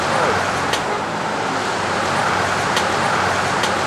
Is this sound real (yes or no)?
no